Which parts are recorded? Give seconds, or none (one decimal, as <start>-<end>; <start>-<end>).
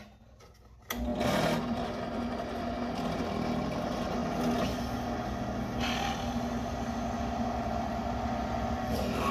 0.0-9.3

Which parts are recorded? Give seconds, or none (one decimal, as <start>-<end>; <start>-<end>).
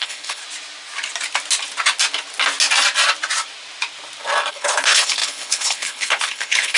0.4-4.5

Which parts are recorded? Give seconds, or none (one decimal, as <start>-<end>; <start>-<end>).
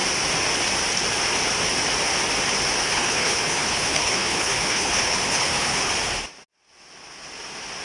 0.0-2.8; 5.9-7.8